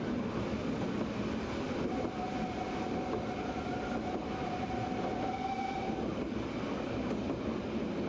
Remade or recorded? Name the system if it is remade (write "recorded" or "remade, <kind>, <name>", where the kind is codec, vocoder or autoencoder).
recorded